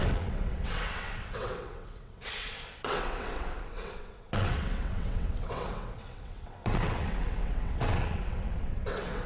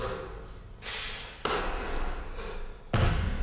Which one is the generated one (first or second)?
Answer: first